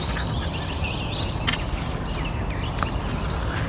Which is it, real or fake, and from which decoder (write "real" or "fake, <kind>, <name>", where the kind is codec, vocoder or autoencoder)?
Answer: real